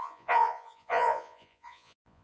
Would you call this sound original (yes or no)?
no